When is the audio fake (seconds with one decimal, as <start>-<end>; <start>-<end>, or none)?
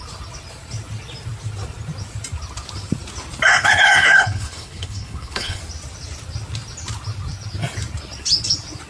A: 3.5-5.6